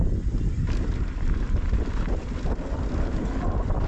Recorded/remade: recorded